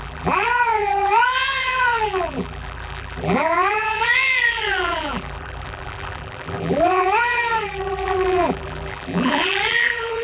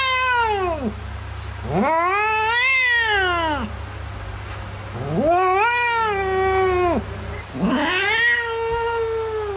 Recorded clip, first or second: second